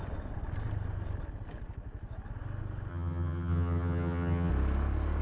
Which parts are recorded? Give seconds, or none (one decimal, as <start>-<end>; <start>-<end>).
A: 0.0-2.9; 4.5-5.2